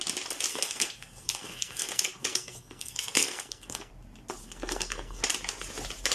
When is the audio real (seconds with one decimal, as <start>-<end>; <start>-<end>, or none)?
0.0-0.5; 3.9-4.4; 5.2-6.1